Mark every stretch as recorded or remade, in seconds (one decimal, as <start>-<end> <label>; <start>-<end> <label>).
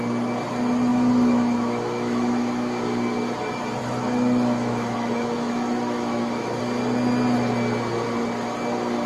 0.0-0.9 recorded; 0.9-2.8 remade; 2.8-3.8 recorded; 3.8-6.6 remade; 6.6-9.1 recorded